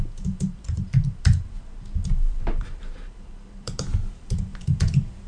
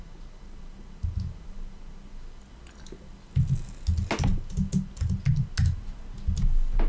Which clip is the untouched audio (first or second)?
second